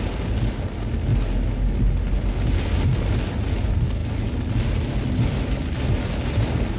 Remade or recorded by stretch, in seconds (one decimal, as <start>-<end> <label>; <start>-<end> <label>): 0.0-6.8 recorded